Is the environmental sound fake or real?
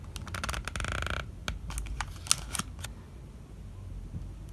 real